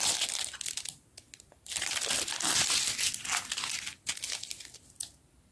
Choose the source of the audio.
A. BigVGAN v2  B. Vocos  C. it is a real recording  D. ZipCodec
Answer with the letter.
C